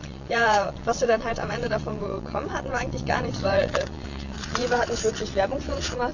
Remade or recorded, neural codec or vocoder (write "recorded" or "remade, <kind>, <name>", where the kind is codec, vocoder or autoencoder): remade, vocoder, WaveNeXt